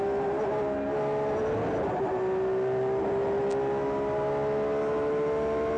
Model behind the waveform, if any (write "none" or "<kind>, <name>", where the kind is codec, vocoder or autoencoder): none